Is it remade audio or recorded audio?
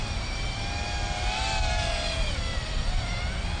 recorded